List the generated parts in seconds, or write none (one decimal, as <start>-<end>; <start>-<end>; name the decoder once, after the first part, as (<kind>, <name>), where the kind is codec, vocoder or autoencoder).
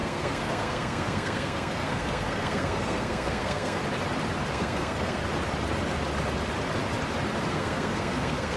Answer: 0.0-3.8 (codec, SNAC); 4.5-5.2; 7.5-8.6